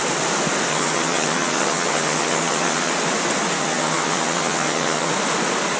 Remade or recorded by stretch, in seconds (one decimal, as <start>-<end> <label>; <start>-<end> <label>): 0.0-0.7 recorded; 0.7-2.9 remade; 2.9-3.6 recorded; 3.6-5.1 remade; 5.1-5.8 recorded